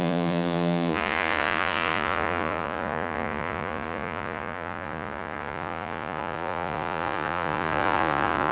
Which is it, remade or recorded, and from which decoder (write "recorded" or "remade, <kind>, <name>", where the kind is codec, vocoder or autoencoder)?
remade, vocoder, Vocos